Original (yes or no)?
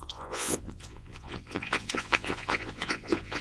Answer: no